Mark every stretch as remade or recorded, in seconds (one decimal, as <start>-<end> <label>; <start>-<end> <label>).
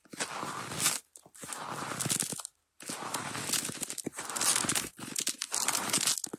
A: 0.0-6.4 recorded